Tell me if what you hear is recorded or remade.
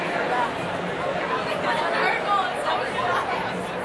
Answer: recorded